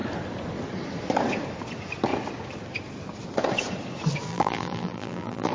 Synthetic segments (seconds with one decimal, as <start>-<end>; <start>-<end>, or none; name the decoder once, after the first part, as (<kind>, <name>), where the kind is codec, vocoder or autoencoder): 4.3-5.5 (vocoder, BigVGAN v2)